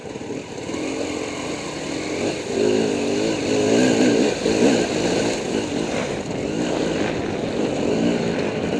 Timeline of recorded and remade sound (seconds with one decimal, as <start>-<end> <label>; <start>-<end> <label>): 0.0-8.8 recorded